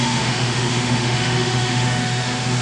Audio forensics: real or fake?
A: fake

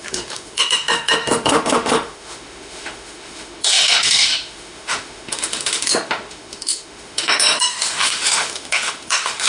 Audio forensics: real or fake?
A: fake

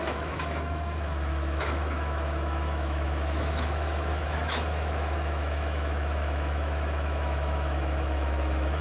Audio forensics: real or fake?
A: fake